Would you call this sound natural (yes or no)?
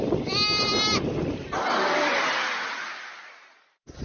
yes